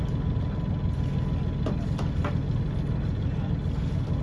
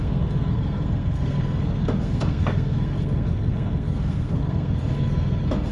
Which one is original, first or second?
first